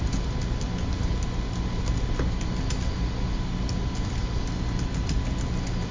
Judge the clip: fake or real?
real